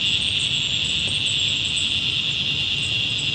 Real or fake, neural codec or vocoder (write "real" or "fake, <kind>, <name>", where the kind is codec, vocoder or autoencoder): real